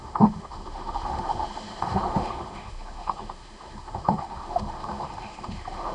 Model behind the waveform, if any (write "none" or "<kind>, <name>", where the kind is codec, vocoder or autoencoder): autoencoder, DAC-VAE